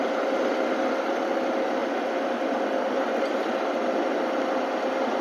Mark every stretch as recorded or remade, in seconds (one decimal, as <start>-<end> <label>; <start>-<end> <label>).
0.0-1.8 recorded; 1.8-2.4 remade; 2.4-5.2 recorded